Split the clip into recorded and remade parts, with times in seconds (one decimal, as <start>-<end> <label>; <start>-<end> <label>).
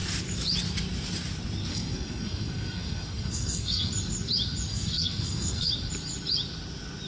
0.0-1.7 recorded; 1.7-3.9 remade; 3.9-4.7 recorded; 4.7-5.7 remade; 5.7-7.1 recorded